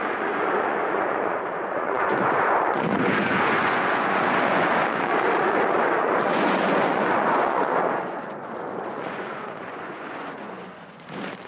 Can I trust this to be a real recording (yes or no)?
no